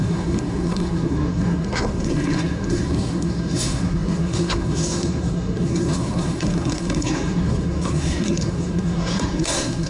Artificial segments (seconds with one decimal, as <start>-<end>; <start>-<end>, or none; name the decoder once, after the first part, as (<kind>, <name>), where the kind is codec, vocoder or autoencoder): 0.0-9.9 (codec, SNAC)